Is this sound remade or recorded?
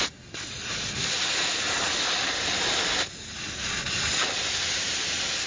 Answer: recorded